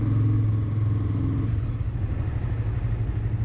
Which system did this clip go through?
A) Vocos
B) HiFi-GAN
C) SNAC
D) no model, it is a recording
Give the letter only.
D